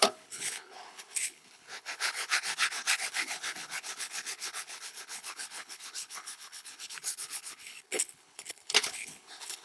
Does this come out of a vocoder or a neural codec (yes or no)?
yes